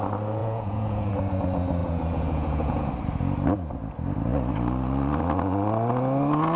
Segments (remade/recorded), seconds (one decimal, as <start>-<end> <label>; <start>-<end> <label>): 0.0-0.4 recorded; 0.4-1.1 remade; 1.1-1.8 recorded; 1.8-2.9 remade; 2.9-6.6 recorded